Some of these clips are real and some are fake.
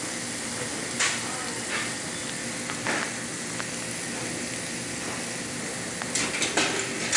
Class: real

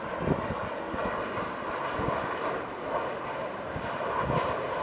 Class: real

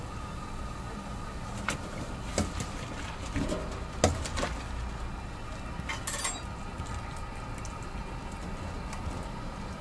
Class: real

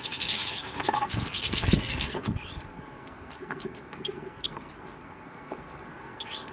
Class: fake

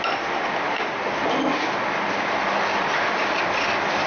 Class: real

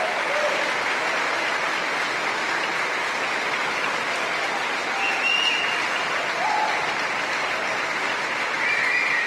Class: real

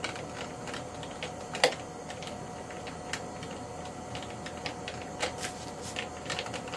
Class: real